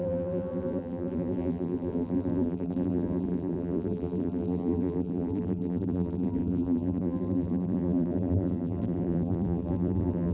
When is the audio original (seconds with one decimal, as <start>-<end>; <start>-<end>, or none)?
none